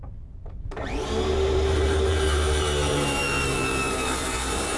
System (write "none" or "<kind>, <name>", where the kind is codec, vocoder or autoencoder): vocoder, BigVGAN v2